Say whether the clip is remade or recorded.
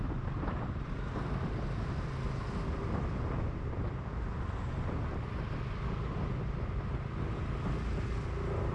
recorded